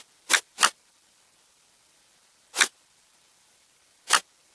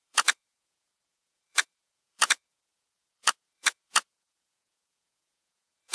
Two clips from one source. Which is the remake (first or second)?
second